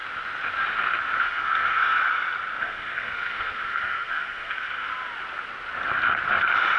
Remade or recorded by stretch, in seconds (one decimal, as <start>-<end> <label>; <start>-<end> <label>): 0.0-1.2 recorded; 1.2-2.0 remade; 2.0-2.6 recorded; 2.6-4.9 remade; 4.9-6.8 recorded